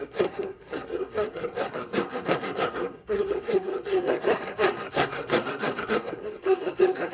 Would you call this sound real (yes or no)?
no